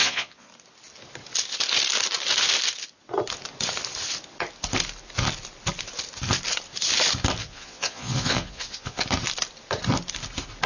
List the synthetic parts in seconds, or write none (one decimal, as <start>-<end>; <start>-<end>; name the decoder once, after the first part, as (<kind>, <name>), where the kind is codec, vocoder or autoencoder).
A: 0.0-0.5 (vocoder, Vocos); 7.4-9.0